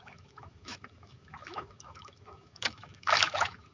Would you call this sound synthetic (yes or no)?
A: yes